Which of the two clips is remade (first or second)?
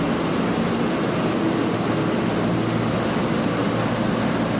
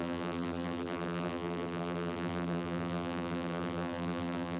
second